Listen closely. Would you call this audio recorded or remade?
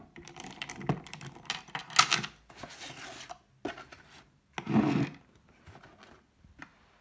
recorded